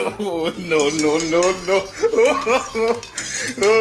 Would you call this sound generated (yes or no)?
no